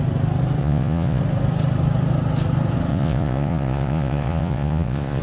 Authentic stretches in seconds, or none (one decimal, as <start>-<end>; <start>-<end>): 0.0-0.6; 1.2-2.9